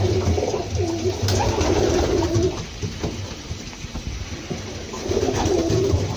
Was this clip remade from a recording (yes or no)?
no